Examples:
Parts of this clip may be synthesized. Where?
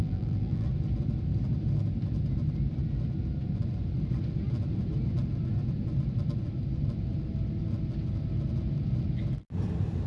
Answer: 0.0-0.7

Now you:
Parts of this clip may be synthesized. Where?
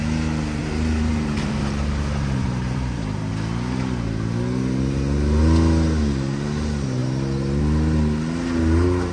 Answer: 0.6-3.3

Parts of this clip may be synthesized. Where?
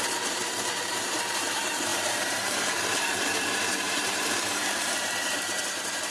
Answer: 0.0-6.1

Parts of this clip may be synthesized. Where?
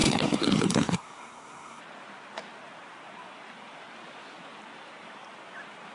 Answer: 0.0-1.8